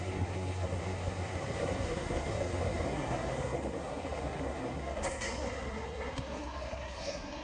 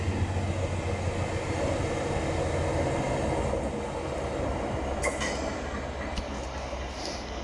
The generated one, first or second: first